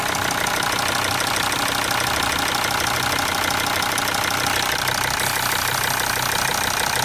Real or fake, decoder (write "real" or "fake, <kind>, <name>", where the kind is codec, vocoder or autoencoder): real